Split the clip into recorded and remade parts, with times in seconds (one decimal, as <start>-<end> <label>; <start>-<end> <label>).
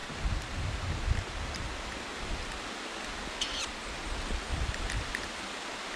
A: 0.0-6.0 recorded